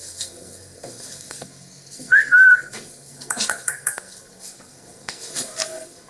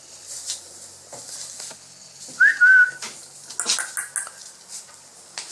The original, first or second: second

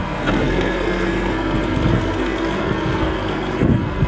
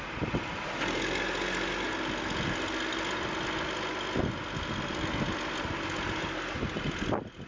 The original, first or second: second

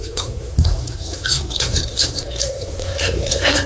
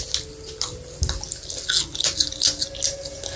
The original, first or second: second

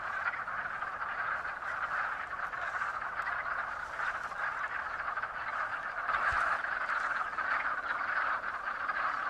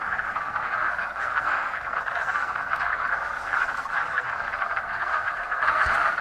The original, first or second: first